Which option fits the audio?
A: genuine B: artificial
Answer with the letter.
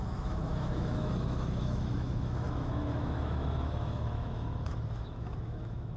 B